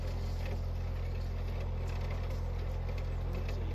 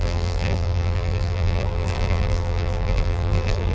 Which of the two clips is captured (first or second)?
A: first